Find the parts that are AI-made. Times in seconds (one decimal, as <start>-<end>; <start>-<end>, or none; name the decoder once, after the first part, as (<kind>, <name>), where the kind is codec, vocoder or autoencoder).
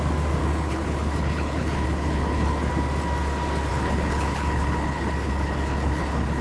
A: 0.4-2.7 (codec, HILCodec); 3.7-6.4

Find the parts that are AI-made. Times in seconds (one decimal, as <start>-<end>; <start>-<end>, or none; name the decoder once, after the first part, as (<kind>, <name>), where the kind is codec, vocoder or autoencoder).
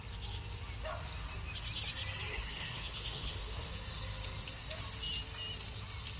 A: 2.3-3.7 (codec, HILCodec)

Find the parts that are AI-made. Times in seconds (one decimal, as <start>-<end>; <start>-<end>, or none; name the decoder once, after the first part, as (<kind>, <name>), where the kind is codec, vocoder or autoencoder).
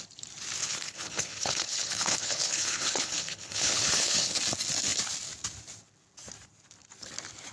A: 0.6-4.4 (codec, HILCodec)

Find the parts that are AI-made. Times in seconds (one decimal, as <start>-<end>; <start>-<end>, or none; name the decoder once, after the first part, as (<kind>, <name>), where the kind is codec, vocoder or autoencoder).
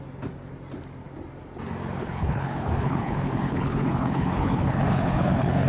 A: 2.0-5.7 (codec, HILCodec)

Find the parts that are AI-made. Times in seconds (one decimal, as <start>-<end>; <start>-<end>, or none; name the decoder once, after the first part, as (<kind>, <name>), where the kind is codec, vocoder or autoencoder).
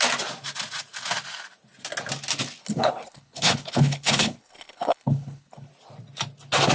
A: 2.6-5.7 (codec, HILCodec)